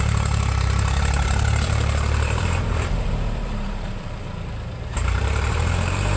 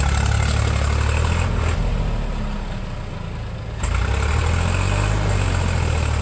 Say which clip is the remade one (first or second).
first